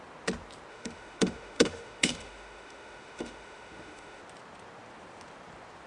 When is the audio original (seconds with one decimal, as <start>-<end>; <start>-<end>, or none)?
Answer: 0.0-0.7; 4.2-5.9